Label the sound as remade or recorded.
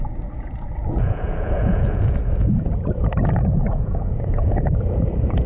remade